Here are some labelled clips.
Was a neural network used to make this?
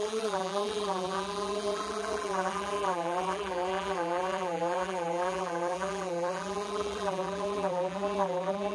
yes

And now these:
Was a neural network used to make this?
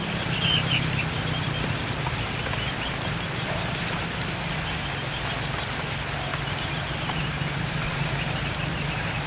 no